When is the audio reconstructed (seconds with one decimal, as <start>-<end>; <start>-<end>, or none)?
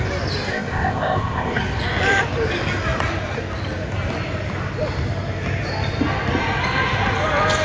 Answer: 0.5-1.6